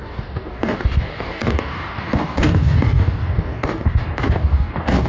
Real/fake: fake